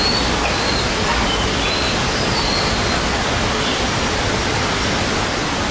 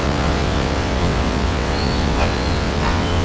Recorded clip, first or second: first